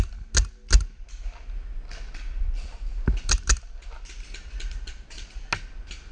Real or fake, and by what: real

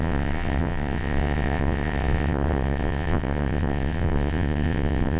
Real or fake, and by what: fake, vocoder, WaveNeXt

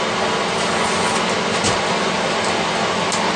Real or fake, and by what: real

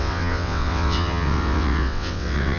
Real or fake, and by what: fake, vocoder, WaveNeXt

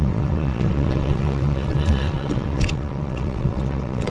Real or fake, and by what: fake, vocoder, WaveNeXt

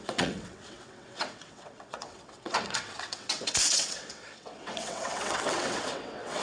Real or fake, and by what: fake, vocoder, WaveNeXt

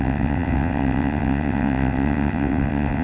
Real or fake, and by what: fake, vocoder, WaveNeXt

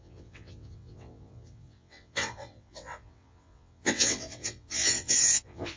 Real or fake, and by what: fake, vocoder, WaveNeXt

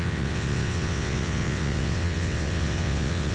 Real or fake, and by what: fake, vocoder, WaveNeXt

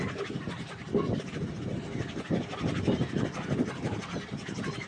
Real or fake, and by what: real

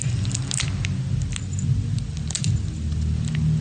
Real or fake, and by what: real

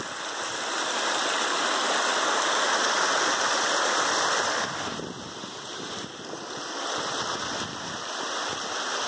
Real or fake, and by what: real